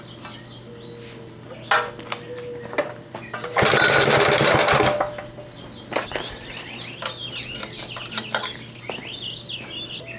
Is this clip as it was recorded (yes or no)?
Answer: yes